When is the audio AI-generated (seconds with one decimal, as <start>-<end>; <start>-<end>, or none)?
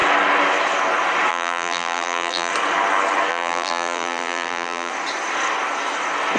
1.3-2.5; 3.3-4.9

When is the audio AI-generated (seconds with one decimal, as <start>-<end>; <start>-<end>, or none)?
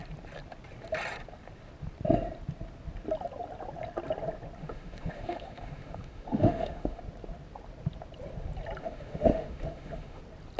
4.6-7.0; 8.8-10.2